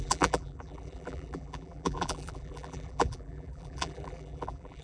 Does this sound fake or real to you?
fake